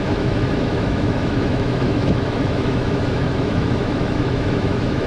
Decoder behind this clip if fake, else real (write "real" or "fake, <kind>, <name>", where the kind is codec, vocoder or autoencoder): fake, autoencoder, DAC-VAE